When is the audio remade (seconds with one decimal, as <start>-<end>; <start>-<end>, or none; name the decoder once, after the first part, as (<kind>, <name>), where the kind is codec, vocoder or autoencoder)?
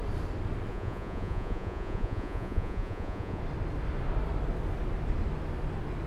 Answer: 0.7-3.4 (vocoder, Vocos)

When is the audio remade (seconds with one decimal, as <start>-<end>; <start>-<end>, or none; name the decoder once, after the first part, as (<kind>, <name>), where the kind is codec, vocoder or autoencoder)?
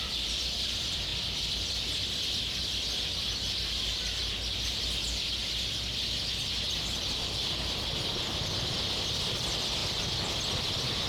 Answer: 0.0-1.1 (vocoder, BigVGAN v2); 3.7-4.2; 8.1-9.8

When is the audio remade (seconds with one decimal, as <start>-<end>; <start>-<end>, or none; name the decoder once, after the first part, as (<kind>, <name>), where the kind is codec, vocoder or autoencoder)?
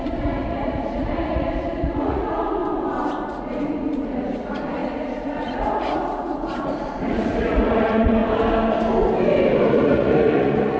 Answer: 0.0-2.6 (vocoder, Vocos); 3.3-8.2; 9.7-10.8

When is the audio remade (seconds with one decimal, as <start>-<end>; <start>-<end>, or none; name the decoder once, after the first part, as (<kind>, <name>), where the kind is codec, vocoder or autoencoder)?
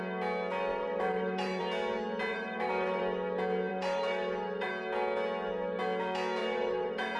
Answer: 0.7-1.6 (vocoder, BigVGAN v2); 2.3-3.0; 3.7-4.7; 6.4-7.2